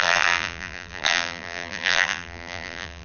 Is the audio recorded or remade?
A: remade